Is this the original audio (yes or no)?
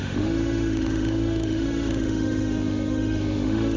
no